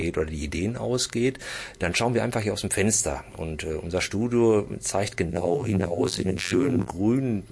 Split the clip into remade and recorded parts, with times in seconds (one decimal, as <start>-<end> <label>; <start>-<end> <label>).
0.0-5.3 recorded; 5.3-6.9 remade; 6.9-7.5 recorded